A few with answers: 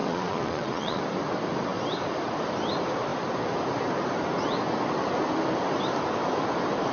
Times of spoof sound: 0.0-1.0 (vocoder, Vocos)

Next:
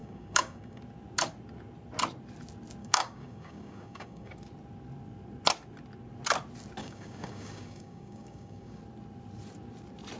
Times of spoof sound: 0.0-0.8 (codec, DAC); 2.8-4.3; 6.8-8.8